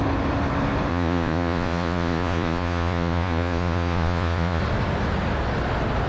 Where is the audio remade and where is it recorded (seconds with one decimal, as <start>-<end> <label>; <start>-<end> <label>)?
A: 0.0-0.9 recorded; 0.9-4.6 remade; 4.6-6.1 recorded

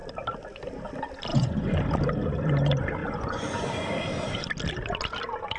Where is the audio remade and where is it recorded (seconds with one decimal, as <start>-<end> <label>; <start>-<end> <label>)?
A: 0.0-1.3 recorded; 1.3-1.8 remade; 1.8-3.0 recorded; 3.0-3.7 remade; 3.7-5.6 recorded